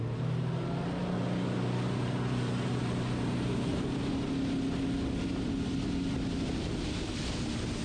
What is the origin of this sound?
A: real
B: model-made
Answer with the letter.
A